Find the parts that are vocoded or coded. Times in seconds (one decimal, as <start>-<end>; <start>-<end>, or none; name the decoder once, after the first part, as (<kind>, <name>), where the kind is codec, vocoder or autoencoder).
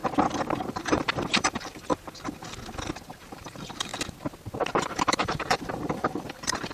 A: 0.6-1.9 (vocoder, BigVGAN v2); 3.2-3.9; 4.7-6.7